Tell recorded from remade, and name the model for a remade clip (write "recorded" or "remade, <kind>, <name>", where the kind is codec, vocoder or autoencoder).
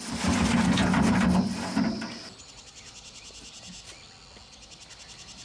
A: recorded